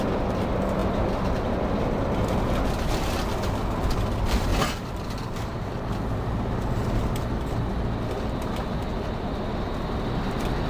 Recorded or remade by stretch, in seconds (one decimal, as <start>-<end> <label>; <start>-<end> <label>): 0.0-4.5 recorded; 4.5-7.3 remade; 7.3-10.7 recorded

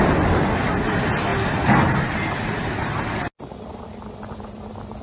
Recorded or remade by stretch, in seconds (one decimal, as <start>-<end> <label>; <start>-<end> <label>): 0.0-5.0 recorded

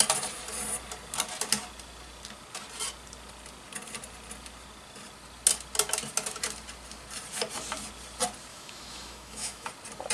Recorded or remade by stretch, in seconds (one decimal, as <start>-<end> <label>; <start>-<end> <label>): 0.0-8.5 recorded; 8.5-9.7 remade; 9.7-10.1 recorded